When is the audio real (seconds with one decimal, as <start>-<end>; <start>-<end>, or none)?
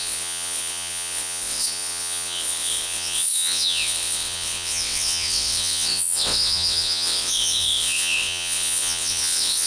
none